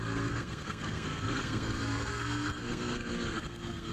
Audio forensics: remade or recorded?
remade